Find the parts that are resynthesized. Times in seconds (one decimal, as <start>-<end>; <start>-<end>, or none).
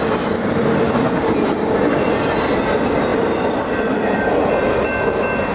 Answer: 3.1-4.7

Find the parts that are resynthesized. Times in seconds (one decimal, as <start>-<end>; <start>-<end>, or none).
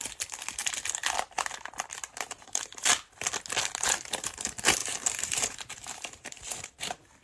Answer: 4.8-6.8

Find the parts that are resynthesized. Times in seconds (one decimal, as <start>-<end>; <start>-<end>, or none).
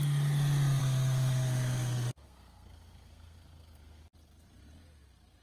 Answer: 0.8-4.0